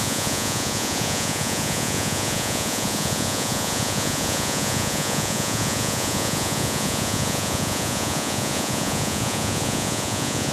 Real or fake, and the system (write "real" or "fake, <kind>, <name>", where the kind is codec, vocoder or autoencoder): fake, vocoder, Vocos